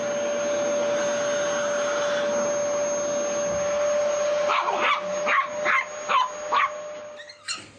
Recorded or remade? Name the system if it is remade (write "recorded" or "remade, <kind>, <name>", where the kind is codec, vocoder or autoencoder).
recorded